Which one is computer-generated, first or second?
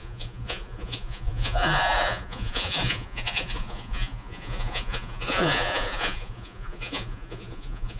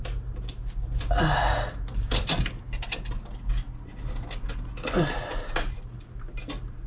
first